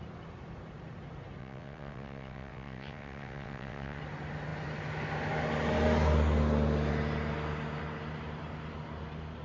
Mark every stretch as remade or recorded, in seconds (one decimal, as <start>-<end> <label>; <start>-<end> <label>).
0.0-1.4 recorded; 1.4-4.0 remade; 4.0-9.4 recorded